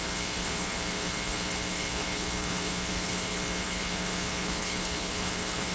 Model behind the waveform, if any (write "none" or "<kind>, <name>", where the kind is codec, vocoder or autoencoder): codec, HILCodec